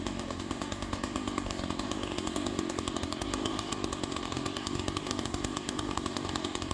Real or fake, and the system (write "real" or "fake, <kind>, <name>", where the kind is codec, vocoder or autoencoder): fake, codec, DAC